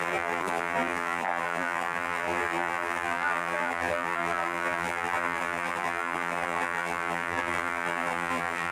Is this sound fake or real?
fake